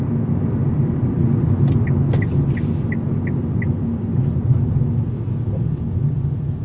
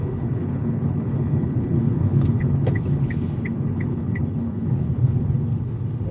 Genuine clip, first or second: first